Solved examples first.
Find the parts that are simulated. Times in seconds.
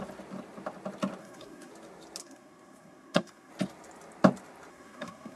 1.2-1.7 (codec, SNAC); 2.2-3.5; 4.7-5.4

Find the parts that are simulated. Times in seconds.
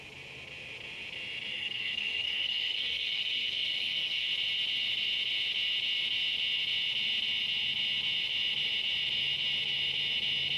1.5-4.3 (codec, SNAC)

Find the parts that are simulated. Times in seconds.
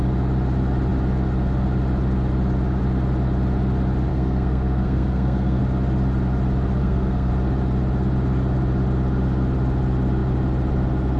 4.1-5.6 (codec, SNAC); 6.8-7.3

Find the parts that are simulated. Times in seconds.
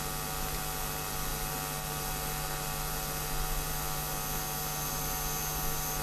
none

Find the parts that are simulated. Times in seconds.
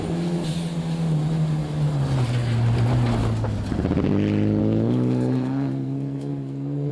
4.6-6.9 (codec, SNAC)